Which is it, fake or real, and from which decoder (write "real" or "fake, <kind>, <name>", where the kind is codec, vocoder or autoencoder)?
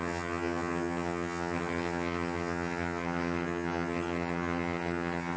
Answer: fake, vocoder, HiFi-GAN